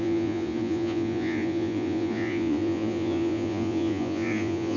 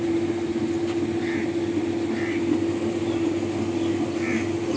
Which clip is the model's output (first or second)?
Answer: first